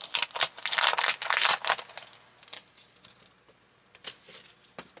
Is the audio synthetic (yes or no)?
no